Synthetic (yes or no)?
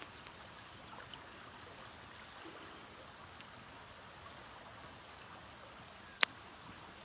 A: no